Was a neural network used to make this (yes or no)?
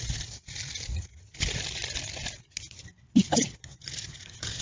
no